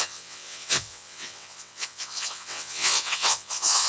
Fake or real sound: fake